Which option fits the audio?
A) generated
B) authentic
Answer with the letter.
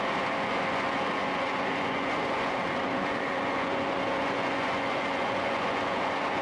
A